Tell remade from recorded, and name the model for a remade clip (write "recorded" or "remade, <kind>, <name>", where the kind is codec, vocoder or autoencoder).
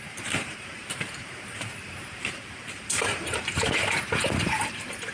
remade, vocoder, BigVGAN v2